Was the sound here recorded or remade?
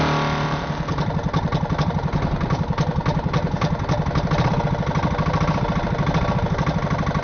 recorded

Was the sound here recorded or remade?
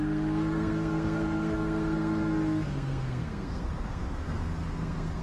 remade